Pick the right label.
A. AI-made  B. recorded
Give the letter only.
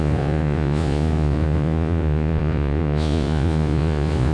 A